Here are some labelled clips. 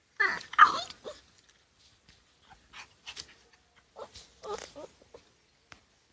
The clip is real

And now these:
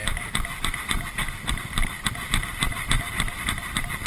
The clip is fake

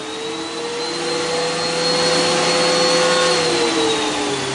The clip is real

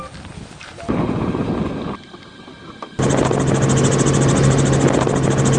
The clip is real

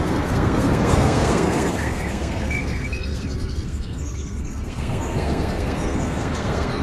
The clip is fake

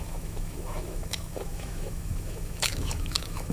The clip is fake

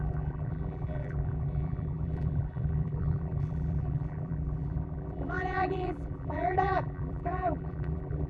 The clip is fake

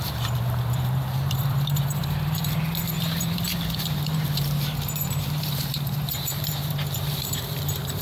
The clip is fake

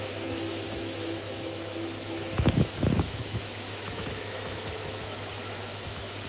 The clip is fake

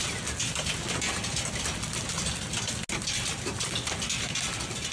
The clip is real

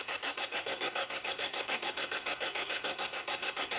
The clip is fake